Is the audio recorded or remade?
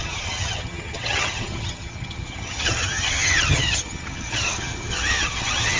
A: remade